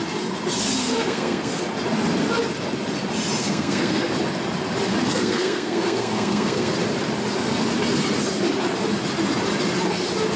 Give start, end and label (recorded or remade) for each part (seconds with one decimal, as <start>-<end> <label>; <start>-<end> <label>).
0.0-0.8 recorded; 0.8-1.6 remade; 1.6-3.4 recorded; 3.4-4.1 remade; 4.1-5.1 recorded; 5.1-6.7 remade; 6.7-10.4 recorded